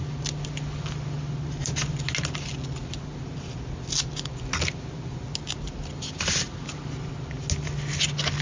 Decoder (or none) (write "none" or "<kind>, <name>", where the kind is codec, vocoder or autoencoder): none